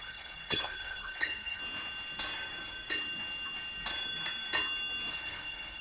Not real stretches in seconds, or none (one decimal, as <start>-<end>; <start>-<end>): 0.0-1.6; 5.1-5.8

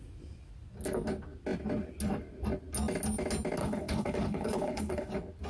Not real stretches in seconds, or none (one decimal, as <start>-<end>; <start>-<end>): 3.6-5.1

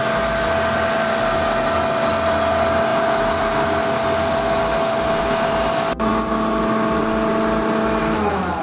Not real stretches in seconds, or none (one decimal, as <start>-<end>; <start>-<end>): none

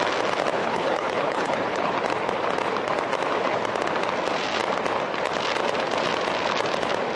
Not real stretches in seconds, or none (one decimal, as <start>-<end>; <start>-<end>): 0.6-1.9